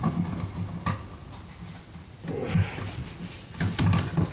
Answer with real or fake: real